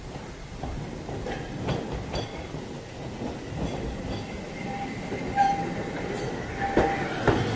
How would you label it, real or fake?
real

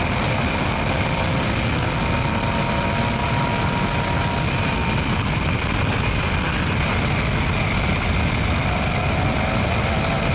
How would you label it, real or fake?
real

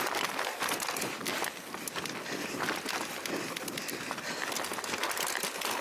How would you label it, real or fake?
real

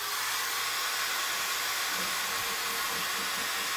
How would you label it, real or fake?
real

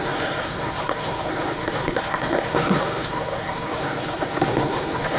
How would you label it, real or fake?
fake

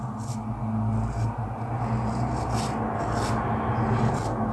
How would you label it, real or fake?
real